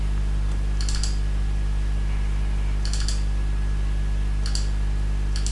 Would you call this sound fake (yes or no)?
no